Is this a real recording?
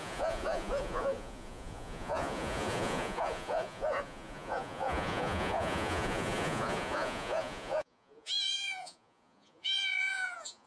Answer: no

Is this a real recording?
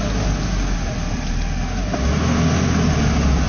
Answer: yes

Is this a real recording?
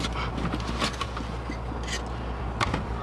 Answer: yes